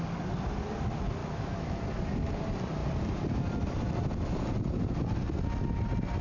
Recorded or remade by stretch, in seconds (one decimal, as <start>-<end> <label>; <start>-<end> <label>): 0.0-1.2 recorded; 1.2-1.8 remade; 1.8-6.2 recorded